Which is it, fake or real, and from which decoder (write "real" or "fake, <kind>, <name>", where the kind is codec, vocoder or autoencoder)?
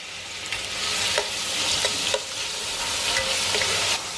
real